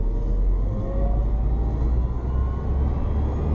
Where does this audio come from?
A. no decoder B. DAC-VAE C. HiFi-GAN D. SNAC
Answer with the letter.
A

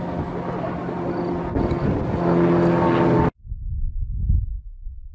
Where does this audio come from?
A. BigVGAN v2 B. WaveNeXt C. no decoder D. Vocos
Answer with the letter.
C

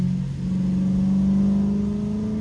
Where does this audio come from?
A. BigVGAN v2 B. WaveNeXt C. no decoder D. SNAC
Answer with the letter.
C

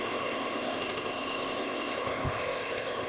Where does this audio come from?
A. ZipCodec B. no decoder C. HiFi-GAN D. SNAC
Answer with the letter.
A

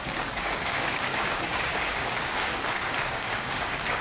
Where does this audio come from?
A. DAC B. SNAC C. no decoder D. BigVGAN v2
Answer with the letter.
A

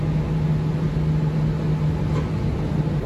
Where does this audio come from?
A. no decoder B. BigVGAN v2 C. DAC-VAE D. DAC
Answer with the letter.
A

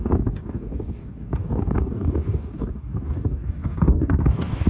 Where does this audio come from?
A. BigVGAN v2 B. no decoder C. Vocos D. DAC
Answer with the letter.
D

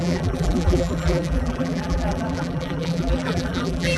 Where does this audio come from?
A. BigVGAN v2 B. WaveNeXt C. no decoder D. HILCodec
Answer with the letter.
A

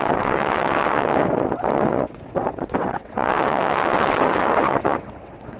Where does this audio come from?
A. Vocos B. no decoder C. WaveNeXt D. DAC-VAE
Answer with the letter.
C